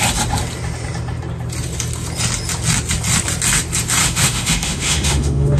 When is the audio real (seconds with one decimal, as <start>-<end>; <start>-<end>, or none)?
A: 0.0-4.0